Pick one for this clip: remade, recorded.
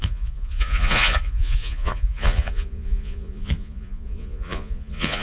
remade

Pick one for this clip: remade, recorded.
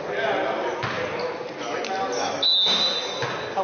recorded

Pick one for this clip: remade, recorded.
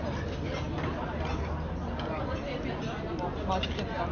recorded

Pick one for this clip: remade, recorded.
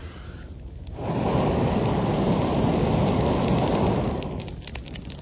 recorded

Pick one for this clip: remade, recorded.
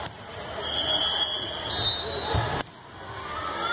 recorded